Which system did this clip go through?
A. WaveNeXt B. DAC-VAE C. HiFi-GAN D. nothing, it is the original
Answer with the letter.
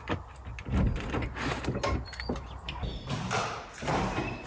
D